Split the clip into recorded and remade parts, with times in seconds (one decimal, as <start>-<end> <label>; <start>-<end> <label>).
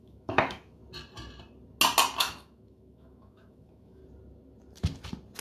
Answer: 0.0-0.8 remade; 0.8-2.2 recorded; 2.2-4.0 remade; 4.0-5.4 recorded